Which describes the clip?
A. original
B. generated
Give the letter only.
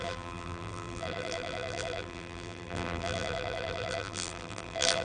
B